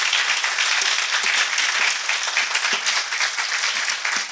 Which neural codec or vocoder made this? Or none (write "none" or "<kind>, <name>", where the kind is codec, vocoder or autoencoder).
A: none